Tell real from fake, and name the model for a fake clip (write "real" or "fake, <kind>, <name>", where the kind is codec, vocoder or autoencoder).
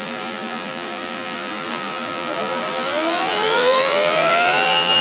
fake, vocoder, BigVGAN v2